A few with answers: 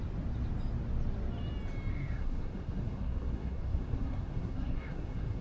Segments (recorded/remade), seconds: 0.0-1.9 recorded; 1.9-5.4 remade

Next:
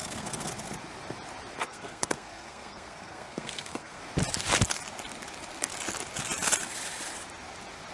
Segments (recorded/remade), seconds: 0.0-0.5 remade; 0.5-1.6 recorded; 1.6-4.0 remade; 4.0-7.9 recorded

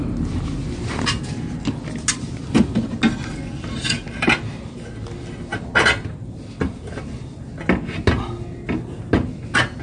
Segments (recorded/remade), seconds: 0.0-9.8 recorded